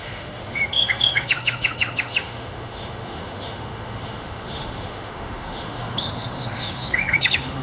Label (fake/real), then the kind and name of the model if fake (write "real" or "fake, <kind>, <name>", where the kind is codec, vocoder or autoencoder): fake, autoencoder, DAC-VAE